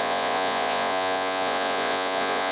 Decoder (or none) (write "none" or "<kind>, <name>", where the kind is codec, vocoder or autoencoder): vocoder, Vocos